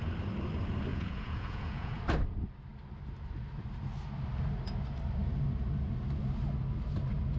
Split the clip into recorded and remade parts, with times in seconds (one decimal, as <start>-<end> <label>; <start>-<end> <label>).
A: 0.0-0.9 recorded; 0.9-2.0 remade; 2.0-7.4 recorded